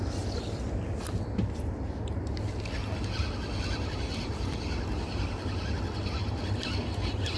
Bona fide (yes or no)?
yes